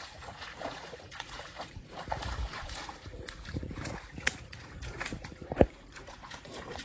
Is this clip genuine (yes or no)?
no